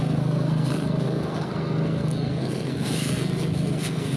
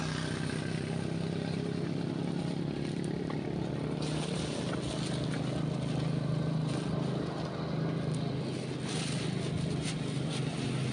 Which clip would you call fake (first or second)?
first